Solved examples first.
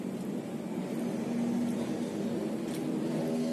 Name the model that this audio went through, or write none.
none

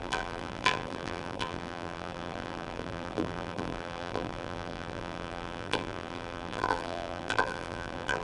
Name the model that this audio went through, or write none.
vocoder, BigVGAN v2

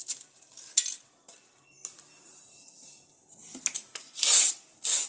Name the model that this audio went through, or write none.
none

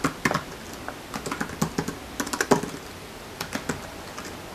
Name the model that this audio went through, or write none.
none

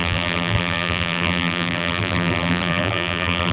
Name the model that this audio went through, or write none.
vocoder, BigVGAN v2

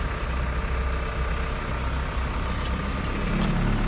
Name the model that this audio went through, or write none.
none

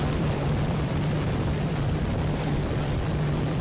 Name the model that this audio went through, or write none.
vocoder, BigVGAN v2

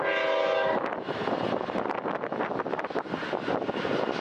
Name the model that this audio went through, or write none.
none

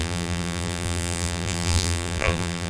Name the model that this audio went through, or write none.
vocoder, BigVGAN v2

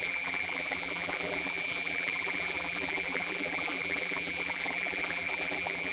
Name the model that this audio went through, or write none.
vocoder, BigVGAN v2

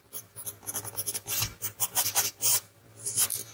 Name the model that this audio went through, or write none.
none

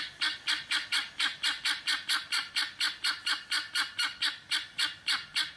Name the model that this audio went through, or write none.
none